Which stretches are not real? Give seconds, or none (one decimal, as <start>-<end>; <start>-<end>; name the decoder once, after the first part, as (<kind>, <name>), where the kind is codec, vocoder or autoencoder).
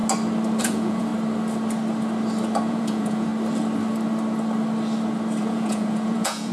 0.6-1.1 (vocoder, Vocos); 2.7-3.3; 5.4-6.5